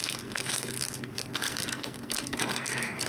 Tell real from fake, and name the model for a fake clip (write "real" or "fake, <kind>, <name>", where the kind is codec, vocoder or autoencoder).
fake, codec, SNAC